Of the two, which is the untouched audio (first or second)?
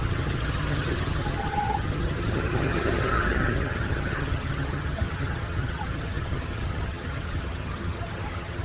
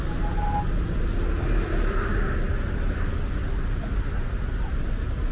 second